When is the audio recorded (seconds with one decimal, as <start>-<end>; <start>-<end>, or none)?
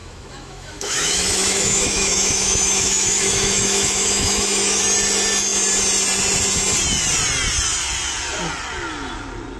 4.8-9.6